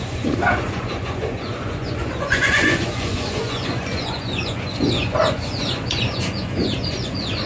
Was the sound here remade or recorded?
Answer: remade